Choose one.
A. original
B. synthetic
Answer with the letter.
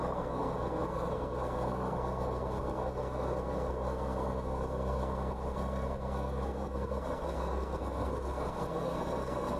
B